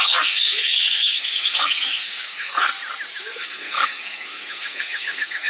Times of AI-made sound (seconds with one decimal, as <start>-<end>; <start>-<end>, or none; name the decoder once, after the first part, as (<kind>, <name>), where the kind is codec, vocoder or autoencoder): 0.0-2.7 (codec, SNAC); 3.2-5.5